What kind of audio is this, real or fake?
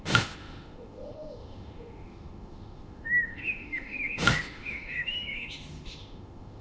fake